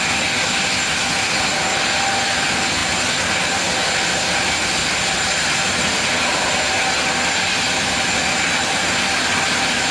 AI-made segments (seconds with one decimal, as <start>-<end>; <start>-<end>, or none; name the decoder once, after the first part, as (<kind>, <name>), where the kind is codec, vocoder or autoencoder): none